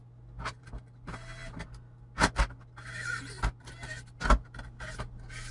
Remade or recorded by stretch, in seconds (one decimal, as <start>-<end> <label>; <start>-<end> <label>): 0.0-5.5 recorded